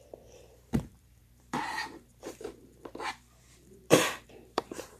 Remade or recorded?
remade